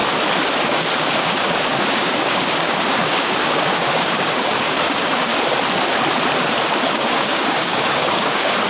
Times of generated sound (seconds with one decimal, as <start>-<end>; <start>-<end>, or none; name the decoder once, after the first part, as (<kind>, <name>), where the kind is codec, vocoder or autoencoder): 0.6-5.3 (codec, DAC); 6.9-8.7